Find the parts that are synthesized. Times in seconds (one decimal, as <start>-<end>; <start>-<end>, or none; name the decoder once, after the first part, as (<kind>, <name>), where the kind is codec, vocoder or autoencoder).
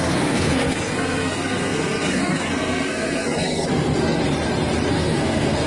0.0-4.2 (codec, SNAC); 4.9-5.7